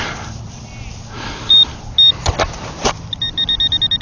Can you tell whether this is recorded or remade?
recorded